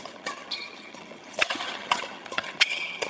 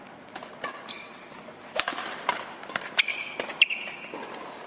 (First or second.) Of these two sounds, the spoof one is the first